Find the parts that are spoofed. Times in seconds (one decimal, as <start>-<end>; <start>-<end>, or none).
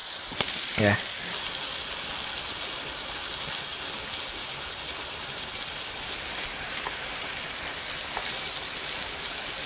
0.0-0.8; 4.4-5.5; 6.5-7.3